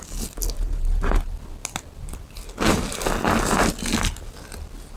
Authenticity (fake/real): real